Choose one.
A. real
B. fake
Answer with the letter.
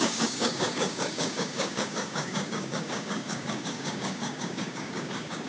B